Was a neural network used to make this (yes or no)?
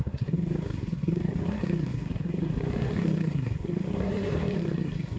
yes